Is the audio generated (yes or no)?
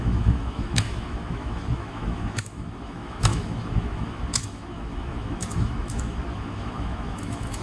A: yes